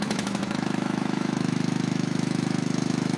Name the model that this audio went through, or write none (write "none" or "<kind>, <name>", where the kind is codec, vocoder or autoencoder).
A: autoencoder, DAC-VAE